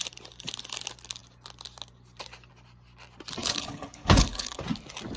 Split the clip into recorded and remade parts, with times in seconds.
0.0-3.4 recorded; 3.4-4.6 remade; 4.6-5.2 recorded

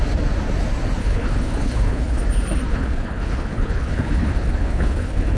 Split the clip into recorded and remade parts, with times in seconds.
0.0-1.0 recorded; 1.0-2.2 remade; 2.2-2.7 recorded; 2.7-5.4 remade

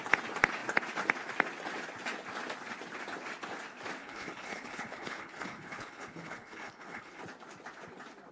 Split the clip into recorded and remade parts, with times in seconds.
0.0-4.0 recorded; 4.0-7.2 remade; 7.2-8.3 recorded

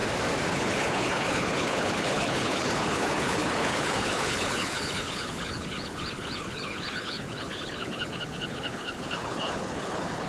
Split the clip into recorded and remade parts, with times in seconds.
0.0-0.5 recorded; 0.5-10.3 remade